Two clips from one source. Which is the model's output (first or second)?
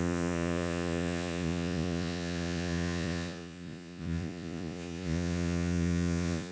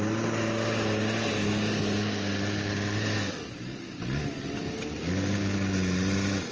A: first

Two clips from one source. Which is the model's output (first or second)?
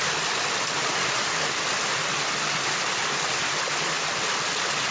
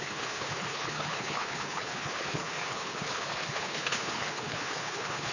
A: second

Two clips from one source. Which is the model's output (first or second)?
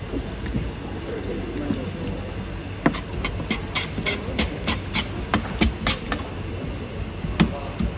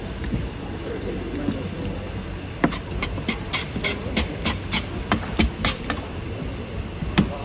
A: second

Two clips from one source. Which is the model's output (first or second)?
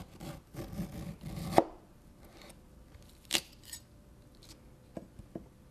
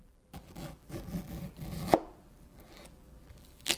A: second